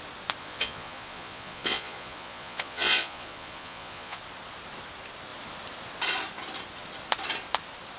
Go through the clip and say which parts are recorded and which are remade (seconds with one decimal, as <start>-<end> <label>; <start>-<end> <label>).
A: 0.0-0.4 recorded; 0.4-4.2 remade; 4.2-8.0 recorded